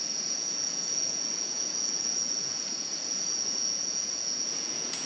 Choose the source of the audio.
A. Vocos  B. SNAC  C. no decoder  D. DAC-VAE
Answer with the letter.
A